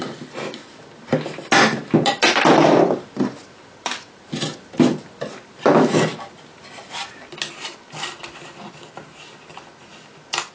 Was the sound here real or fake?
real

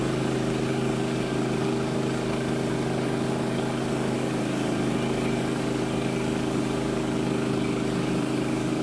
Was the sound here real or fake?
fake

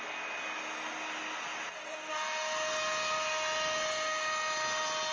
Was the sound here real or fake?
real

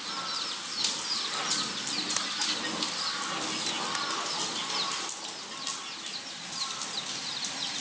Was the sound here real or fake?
real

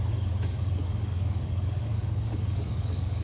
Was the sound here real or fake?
fake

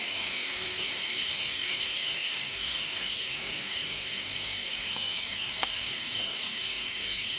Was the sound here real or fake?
fake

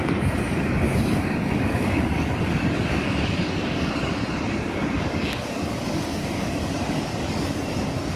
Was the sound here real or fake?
fake